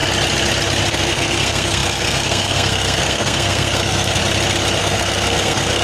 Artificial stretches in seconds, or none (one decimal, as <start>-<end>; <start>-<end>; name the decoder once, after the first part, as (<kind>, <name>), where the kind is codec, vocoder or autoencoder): 0.9-4.2 (codec, SNAC); 4.8-5.8